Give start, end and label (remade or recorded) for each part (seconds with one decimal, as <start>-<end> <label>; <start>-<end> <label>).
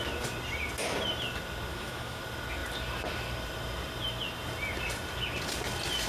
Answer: 0.0-1.7 recorded; 1.7-2.2 remade; 2.2-6.1 recorded